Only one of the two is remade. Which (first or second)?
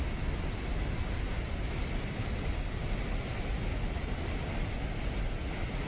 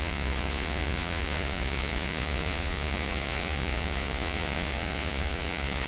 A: second